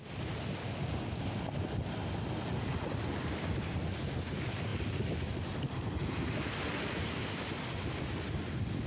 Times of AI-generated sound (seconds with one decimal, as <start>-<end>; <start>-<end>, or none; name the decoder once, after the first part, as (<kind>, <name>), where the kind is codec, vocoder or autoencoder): none